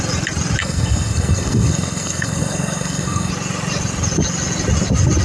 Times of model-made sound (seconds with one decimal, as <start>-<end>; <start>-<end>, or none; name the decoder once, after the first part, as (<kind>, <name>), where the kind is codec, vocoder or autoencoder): 0.6-3.3 (codec, SNAC)